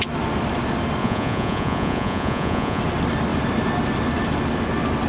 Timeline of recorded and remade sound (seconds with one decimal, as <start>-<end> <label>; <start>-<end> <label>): 0.0-1.0 recorded; 1.0-2.8 remade; 2.8-5.1 recorded